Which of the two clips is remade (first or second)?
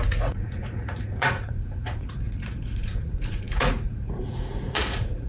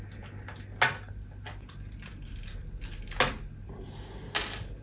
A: first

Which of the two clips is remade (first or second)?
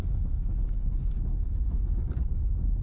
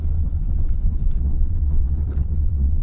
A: second